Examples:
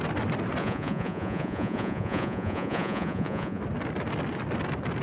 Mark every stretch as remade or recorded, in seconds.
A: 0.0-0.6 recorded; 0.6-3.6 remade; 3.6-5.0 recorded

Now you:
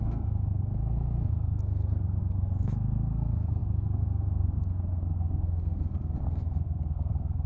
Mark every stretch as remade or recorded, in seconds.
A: 0.0-7.5 remade

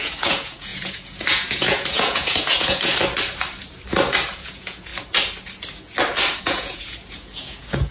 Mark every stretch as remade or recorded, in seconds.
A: 0.0-2.9 remade; 2.9-4.3 recorded; 4.3-4.9 remade; 4.9-6.4 recorded; 6.4-7.9 remade